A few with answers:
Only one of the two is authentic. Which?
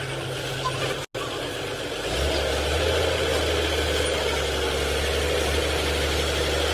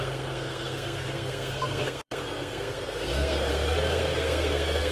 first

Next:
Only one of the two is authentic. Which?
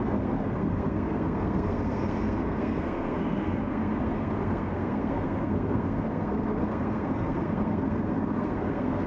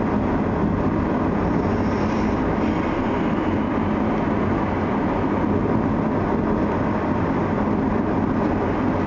second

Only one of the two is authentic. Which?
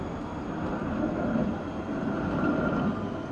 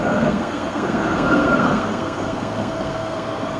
first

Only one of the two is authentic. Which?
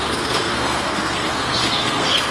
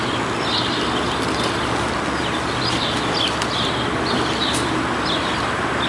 second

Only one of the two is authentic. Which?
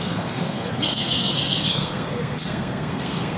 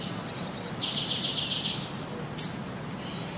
second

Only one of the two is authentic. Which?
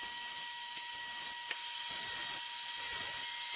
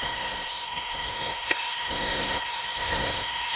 first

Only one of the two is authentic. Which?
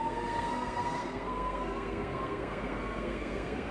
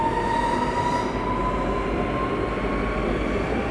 second